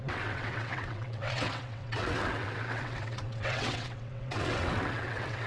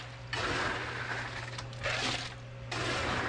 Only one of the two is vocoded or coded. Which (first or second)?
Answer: first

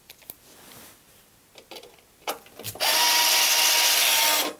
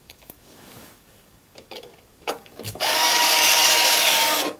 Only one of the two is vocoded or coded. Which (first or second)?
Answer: second